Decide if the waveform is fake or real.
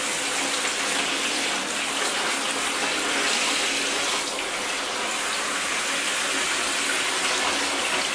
real